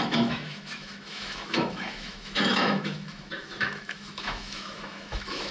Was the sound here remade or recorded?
remade